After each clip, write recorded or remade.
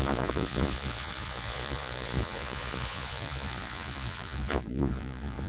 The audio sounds remade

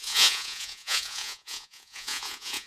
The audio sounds remade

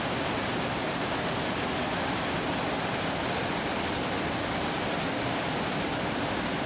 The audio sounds recorded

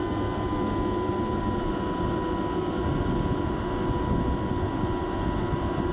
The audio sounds recorded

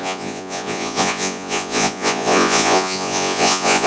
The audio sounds remade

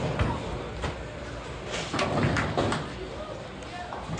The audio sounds recorded